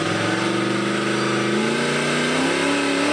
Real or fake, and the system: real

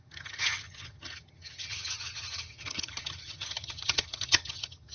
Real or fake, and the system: fake, vocoder, HiFi-GAN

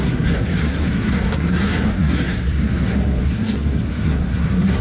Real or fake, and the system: fake, codec, SNAC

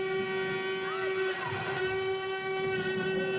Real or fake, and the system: real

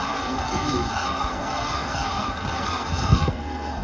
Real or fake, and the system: fake, codec, SNAC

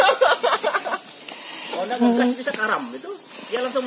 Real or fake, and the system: real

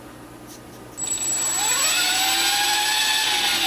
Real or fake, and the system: real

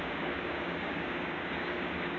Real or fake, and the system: fake, codec, DAC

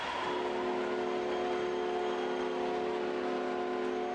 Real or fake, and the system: real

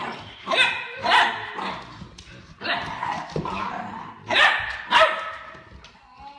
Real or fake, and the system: real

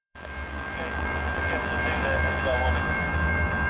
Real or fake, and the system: fake, vocoder, BigVGAN v2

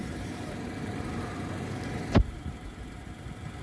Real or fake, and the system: fake, vocoder, BigVGAN v2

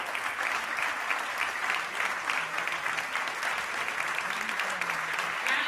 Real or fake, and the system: real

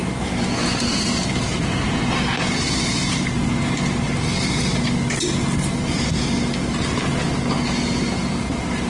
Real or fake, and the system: real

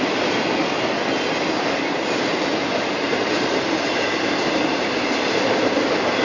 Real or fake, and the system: real